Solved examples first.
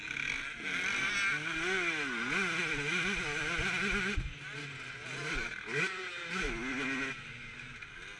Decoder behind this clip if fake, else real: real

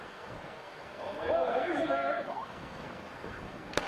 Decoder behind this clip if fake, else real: fake, codec, SNAC